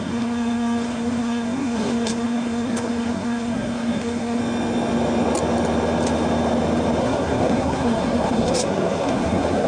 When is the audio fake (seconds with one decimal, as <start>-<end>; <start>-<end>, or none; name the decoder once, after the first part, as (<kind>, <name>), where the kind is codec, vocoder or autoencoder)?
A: 0.0-4.4 (codec, SNAC); 7.0-9.7